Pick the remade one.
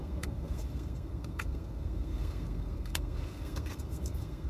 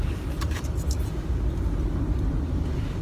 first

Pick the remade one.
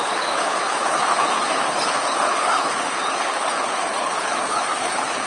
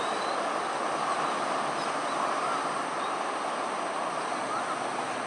first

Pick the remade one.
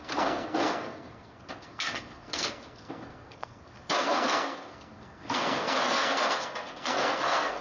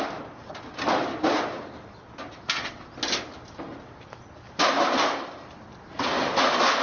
first